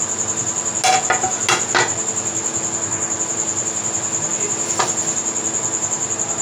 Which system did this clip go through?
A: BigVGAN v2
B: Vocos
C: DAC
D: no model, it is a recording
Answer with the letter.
D